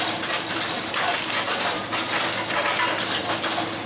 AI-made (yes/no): yes